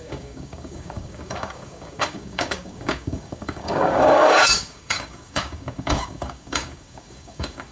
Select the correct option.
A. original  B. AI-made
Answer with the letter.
B